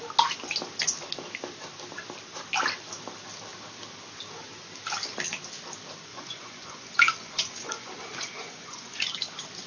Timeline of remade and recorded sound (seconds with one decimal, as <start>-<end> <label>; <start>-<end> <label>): 0.0-6.1 recorded; 6.1-9.0 remade; 9.0-9.7 recorded